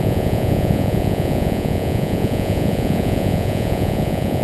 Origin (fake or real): fake